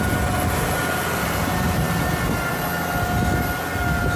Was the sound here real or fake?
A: real